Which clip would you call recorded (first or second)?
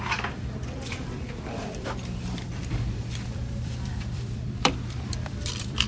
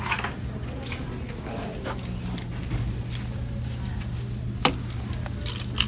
second